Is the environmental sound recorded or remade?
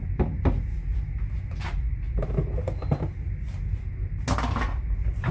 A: recorded